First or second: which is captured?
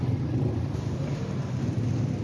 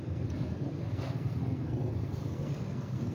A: first